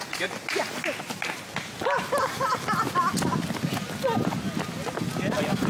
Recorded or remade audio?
recorded